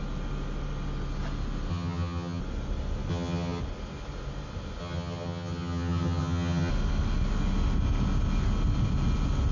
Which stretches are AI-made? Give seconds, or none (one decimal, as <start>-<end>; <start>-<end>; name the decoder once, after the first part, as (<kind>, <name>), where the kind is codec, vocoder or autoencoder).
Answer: 1.7-2.4 (vocoder, HiFi-GAN); 3.1-3.6; 4.8-6.7

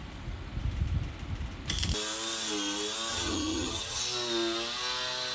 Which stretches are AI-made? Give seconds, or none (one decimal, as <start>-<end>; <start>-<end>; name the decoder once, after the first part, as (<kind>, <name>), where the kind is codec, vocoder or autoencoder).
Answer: 3.1-4.0 (vocoder, HiFi-GAN)